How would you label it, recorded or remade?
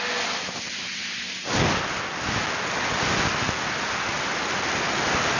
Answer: recorded